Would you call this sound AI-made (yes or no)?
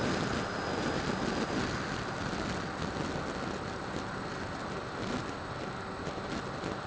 no